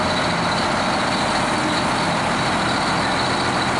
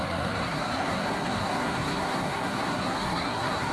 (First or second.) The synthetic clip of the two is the second